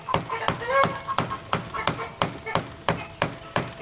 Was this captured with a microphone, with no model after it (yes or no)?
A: yes